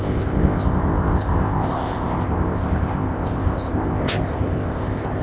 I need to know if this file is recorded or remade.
remade